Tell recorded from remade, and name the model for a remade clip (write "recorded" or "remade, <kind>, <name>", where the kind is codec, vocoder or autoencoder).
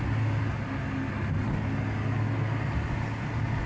recorded